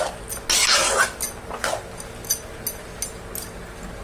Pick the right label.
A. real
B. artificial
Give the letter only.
A